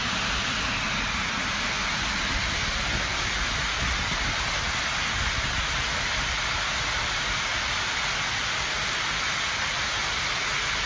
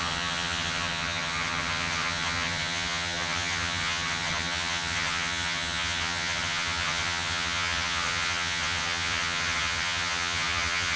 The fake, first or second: second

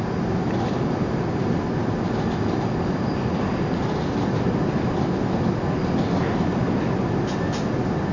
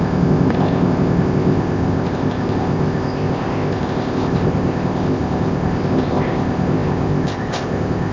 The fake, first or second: second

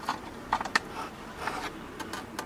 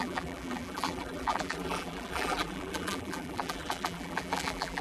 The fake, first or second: second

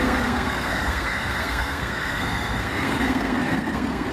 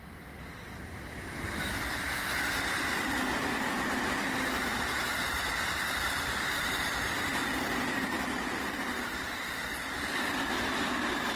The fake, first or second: first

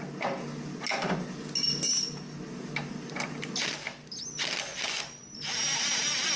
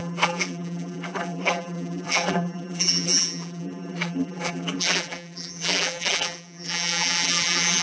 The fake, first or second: second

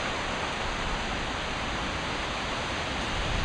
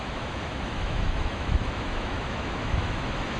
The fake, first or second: second